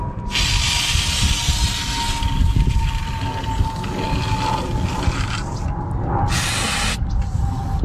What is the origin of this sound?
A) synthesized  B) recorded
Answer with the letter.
B